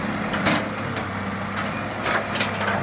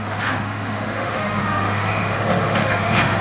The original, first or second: first